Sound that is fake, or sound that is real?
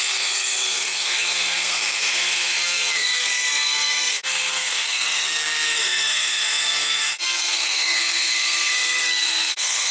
fake